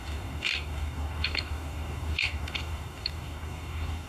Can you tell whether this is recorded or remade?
remade